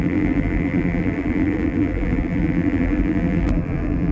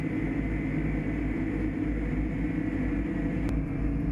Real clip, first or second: second